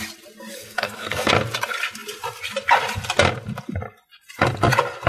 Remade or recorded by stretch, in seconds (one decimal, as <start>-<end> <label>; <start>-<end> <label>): 0.0-0.5 recorded; 0.5-1.3 remade; 1.3-5.1 recorded